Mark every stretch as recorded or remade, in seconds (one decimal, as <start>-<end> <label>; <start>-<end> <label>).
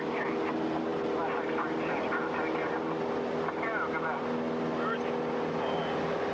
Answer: 0.0-6.3 recorded